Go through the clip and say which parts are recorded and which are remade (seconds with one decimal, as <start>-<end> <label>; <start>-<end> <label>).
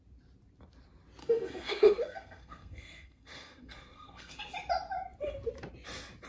0.0-1.2 recorded; 1.2-4.4 remade; 4.4-6.3 recorded